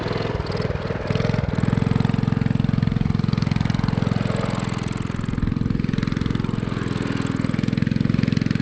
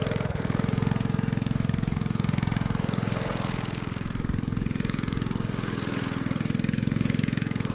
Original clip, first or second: first